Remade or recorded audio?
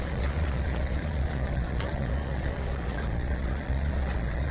remade